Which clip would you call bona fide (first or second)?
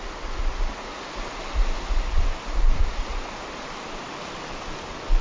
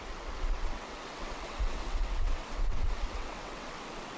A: first